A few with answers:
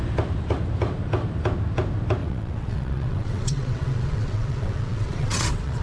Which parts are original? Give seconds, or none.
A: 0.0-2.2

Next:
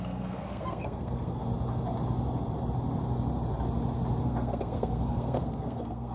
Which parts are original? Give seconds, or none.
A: 1.4-4.2

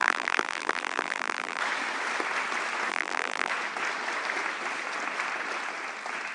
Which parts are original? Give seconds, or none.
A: 1.6-2.9; 3.5-6.3

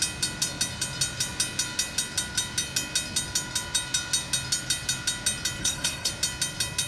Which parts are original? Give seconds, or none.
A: 0.0-5.6; 6.1-6.9

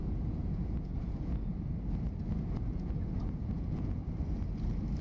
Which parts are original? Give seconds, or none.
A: 1.5-2.7; 4.0-5.0

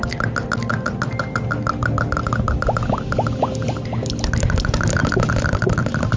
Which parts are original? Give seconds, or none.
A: 0.0-6.2

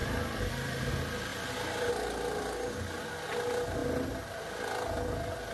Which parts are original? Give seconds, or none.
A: 0.8-1.3; 1.9-5.5